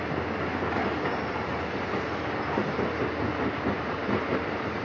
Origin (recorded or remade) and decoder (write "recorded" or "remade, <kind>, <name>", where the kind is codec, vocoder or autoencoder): recorded